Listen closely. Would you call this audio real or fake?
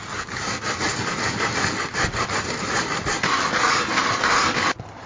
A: real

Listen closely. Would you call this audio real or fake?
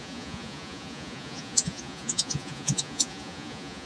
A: fake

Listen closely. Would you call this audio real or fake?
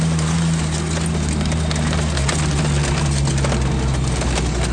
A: real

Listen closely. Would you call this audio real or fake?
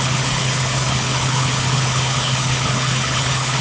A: fake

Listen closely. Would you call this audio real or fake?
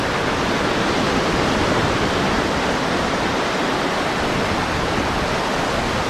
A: real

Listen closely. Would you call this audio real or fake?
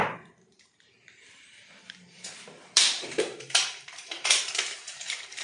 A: fake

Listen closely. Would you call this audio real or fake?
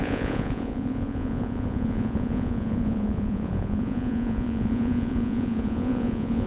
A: fake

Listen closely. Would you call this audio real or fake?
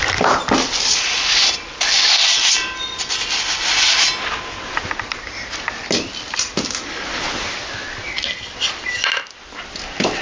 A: real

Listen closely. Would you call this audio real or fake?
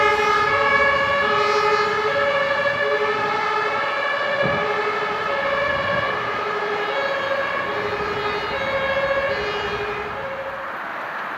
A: real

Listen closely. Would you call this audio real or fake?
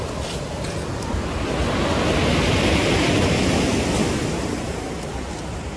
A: real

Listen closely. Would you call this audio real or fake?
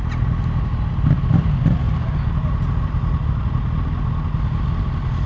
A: real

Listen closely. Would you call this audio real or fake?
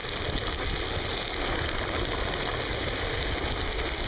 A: real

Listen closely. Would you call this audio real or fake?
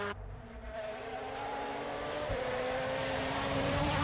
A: fake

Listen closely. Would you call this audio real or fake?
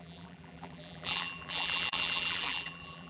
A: fake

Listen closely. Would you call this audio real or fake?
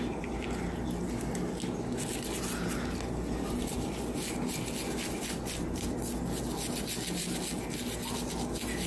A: real